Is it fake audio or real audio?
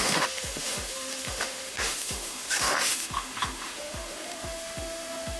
fake